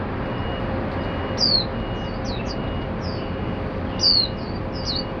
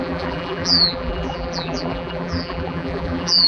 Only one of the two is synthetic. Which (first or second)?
second